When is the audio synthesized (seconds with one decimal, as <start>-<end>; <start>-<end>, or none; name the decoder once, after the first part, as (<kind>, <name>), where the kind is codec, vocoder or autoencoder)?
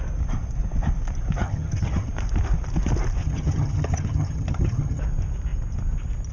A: 1.4-2.1 (vocoder, HiFi-GAN); 3.2-5.0